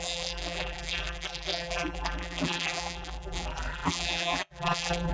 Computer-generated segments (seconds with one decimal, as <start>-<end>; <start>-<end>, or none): 0.0-5.1